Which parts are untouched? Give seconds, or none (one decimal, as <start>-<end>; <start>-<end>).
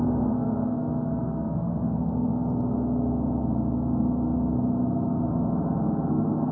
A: 2.3-6.1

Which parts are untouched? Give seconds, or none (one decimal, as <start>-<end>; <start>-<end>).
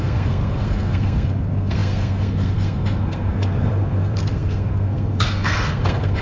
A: none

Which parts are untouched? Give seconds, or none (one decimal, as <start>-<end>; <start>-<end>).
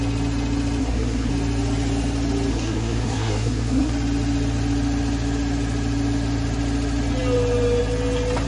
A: 0.0-0.8; 1.3-2.5; 3.9-8.5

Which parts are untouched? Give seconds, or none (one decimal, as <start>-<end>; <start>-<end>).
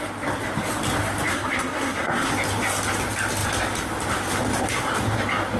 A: 0.0-1.3; 2.3-5.6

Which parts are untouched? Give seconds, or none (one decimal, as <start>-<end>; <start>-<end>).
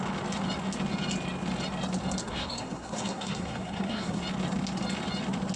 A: 0.0-2.2; 4.2-5.6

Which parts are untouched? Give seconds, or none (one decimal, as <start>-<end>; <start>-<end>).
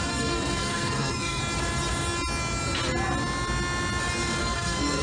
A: 1.4-4.4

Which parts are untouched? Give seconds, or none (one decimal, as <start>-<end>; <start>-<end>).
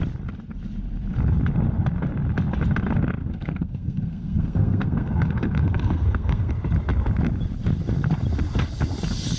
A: 0.0-3.2; 6.5-9.4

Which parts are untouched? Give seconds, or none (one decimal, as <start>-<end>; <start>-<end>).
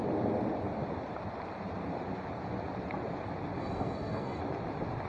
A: 0.0-3.6; 4.4-5.1